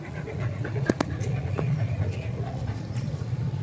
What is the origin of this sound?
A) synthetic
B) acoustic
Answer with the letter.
A